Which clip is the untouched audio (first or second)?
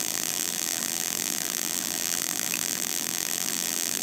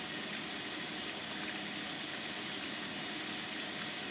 second